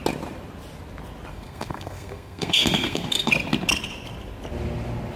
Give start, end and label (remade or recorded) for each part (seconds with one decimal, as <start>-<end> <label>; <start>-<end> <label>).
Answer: 0.0-1.3 recorded; 1.3-3.3 remade; 3.3-5.2 recorded